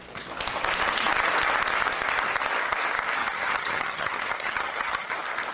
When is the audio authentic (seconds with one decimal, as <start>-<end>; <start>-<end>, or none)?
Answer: 0.0-3.2; 5.1-5.5